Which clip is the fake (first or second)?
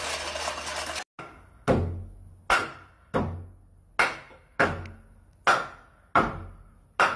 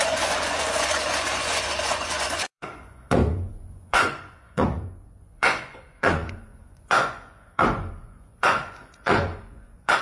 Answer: second